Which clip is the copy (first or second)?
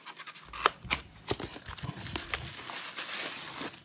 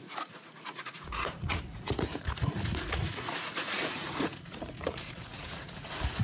second